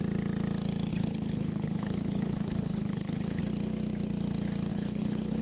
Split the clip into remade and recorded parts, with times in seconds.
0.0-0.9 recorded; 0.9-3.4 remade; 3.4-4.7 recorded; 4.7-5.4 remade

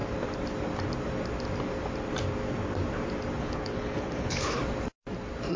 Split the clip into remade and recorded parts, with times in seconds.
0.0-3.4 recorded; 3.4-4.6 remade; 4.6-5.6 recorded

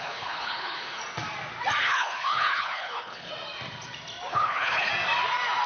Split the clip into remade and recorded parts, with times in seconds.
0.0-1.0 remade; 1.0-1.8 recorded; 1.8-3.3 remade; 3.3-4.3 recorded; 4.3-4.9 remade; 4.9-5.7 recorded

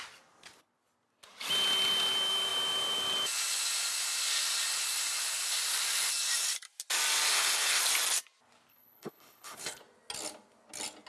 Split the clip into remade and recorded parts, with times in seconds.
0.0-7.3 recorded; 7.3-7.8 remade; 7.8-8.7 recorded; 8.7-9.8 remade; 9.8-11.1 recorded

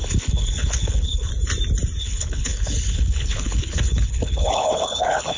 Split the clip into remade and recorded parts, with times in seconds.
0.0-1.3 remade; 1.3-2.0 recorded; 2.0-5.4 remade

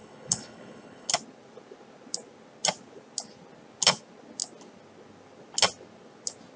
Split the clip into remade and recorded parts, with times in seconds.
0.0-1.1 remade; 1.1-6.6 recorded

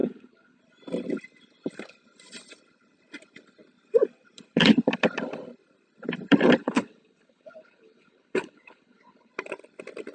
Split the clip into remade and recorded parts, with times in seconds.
0.0-0.6 remade; 0.6-6.6 recorded; 6.6-9.3 remade; 9.3-10.1 recorded